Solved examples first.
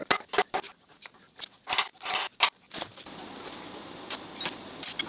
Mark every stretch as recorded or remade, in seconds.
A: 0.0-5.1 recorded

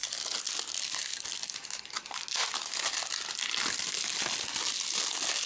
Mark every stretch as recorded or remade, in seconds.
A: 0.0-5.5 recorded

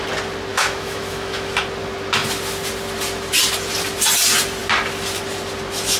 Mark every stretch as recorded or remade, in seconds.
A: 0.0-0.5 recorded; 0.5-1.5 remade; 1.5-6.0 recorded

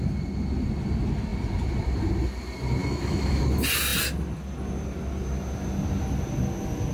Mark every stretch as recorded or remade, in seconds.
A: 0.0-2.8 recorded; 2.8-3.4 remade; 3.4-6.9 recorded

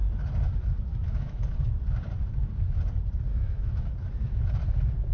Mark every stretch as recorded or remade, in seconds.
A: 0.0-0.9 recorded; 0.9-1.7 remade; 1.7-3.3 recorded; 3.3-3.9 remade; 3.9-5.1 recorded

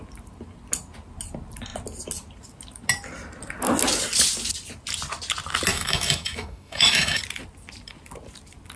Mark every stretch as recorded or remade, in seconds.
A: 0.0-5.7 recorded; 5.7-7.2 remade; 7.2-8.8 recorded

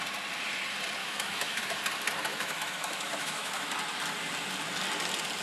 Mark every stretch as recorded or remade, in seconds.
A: 0.0-1.0 recorded; 1.0-1.8 remade; 1.8-2.3 recorded; 2.3-3.7 remade; 3.7-5.4 recorded